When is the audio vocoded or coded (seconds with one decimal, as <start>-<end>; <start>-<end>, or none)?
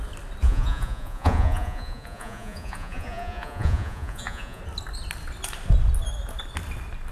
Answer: 0.4-4.6